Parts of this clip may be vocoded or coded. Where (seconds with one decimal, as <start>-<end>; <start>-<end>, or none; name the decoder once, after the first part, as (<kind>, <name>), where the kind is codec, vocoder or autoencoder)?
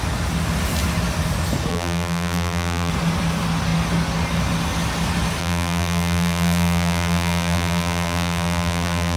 1.7-2.9 (vocoder, BigVGAN v2); 5.4-9.2